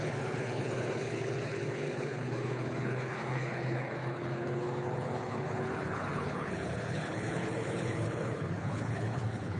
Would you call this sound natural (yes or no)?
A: no